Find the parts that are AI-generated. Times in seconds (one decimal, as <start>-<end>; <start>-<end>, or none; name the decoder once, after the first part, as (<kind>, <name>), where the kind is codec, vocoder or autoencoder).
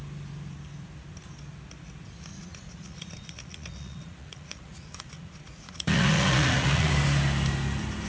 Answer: 2.3-6.9 (vocoder, Vocos)